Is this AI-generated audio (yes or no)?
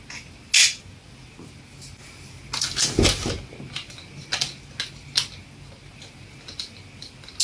no